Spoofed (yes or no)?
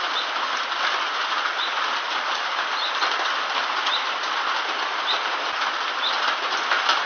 no